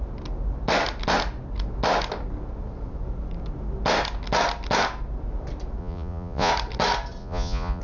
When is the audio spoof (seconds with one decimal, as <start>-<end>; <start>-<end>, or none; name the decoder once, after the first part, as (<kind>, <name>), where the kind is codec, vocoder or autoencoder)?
5.8-6.5 (vocoder, Vocos); 7.2-7.8